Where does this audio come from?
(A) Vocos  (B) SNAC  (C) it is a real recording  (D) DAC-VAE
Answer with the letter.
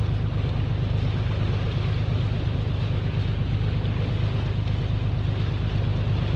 C